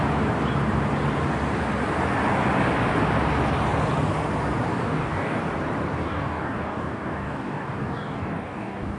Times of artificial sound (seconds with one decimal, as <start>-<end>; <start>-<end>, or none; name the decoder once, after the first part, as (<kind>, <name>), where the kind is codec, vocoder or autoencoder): 4.7-5.4 (codec, DAC); 6.0-9.0